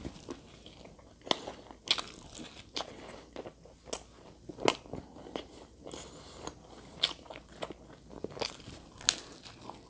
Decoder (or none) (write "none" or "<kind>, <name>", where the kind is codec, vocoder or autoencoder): none